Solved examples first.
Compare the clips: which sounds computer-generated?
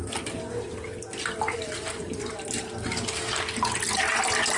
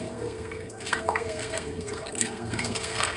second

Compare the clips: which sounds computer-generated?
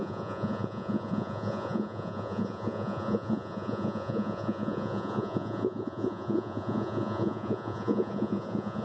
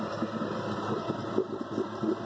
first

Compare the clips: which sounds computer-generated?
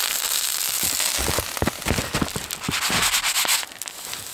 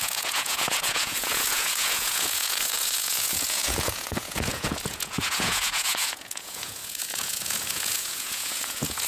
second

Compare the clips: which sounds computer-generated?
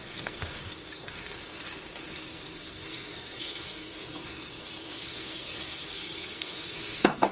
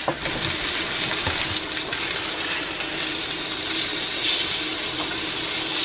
first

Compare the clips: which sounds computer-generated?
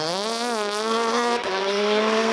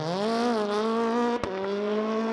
first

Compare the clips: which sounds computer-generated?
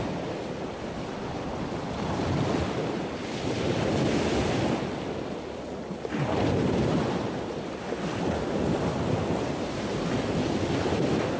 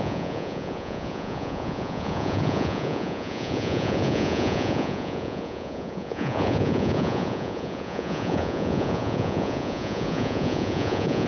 second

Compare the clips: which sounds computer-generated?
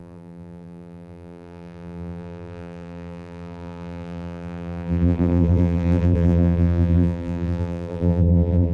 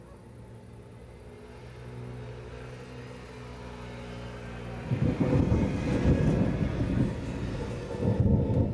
first